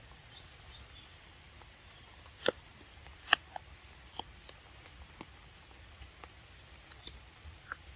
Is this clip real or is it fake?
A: real